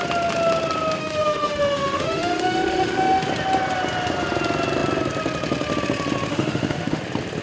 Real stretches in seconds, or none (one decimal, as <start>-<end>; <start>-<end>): 0.0-1.0; 3.3-6.3; 7.0-7.4